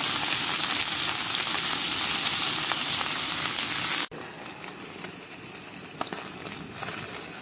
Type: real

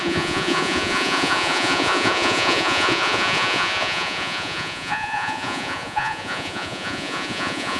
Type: fake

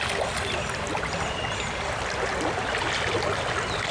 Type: real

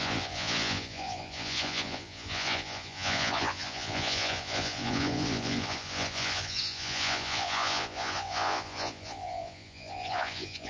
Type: fake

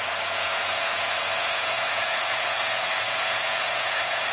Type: fake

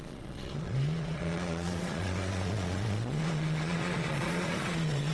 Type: fake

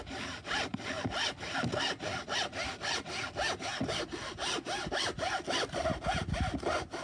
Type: real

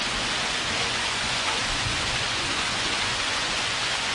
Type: fake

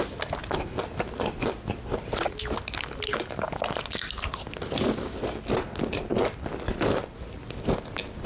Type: real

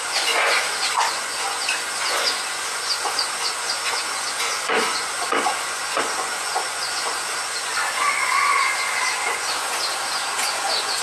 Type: fake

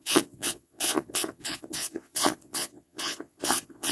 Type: fake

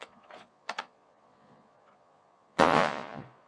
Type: fake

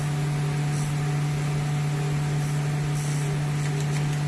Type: real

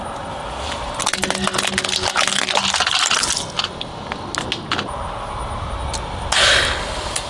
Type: real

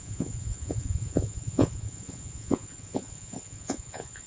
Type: fake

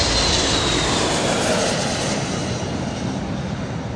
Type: real